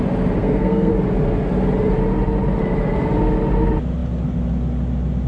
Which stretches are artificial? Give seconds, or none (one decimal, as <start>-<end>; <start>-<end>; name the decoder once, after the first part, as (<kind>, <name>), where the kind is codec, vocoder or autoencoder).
0.4-0.9 (codec, SNAC)